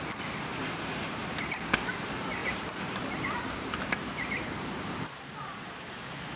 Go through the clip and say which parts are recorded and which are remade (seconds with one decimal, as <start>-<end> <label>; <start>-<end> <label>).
0.0-0.5 recorded; 0.5-1.4 remade; 1.4-2.4 recorded; 2.4-6.4 remade